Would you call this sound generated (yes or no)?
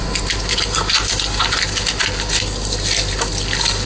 no